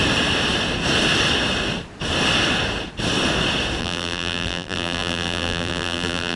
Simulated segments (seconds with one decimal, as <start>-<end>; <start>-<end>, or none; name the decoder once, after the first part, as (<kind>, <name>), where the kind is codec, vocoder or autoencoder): 3.8-6.4 (vocoder, BigVGAN v2)